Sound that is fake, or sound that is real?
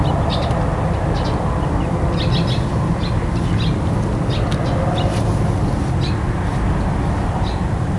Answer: real